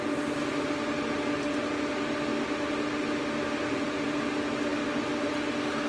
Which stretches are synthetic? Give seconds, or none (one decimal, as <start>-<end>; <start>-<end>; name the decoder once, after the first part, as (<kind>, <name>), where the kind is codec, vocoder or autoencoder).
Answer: none